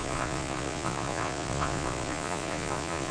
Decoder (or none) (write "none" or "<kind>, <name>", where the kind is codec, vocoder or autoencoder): vocoder, Vocos